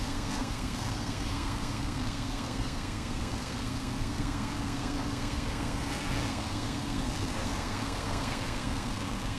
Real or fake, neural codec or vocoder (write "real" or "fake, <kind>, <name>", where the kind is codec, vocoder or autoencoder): fake, codec, SNAC